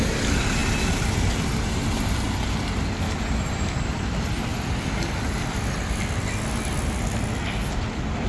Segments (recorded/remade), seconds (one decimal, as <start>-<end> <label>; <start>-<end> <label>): 0.0-8.3 recorded